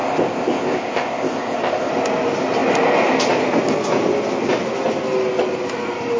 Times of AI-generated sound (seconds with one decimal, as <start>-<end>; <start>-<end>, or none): 0.0-1.9